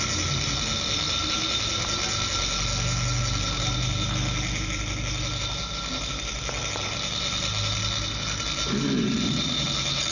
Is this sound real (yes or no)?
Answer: yes